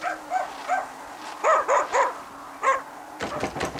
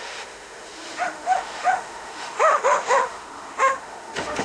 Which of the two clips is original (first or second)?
first